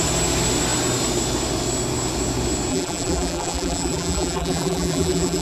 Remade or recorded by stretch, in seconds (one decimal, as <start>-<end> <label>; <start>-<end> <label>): 0.0-2.7 recorded; 2.7-5.4 remade